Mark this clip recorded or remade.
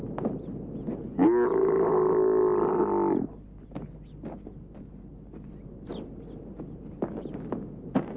recorded